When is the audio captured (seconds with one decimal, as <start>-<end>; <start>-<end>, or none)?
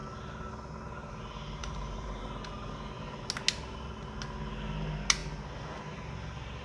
0.0-1.6; 2.2-6.6